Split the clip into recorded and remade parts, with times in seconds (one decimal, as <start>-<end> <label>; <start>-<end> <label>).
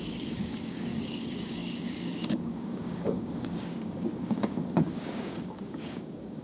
0.0-6.4 remade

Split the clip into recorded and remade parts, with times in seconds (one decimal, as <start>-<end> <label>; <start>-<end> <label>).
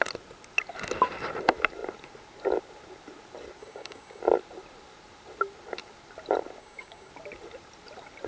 0.0-3.6 recorded; 3.6-4.2 remade; 4.2-6.6 recorded; 6.6-7.1 remade; 7.1-8.3 recorded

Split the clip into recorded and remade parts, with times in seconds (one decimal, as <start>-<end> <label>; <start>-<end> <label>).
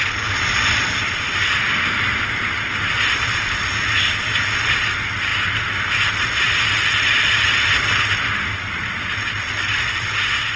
0.0-10.6 recorded